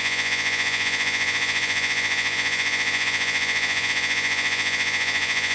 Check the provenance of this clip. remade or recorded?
remade